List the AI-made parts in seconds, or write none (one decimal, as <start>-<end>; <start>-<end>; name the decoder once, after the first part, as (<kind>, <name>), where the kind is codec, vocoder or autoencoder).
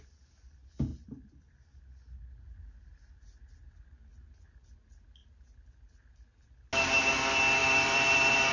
7.6-8.5 (vocoder, BigVGAN v2)